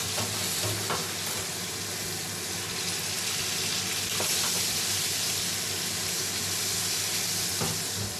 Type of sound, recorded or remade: recorded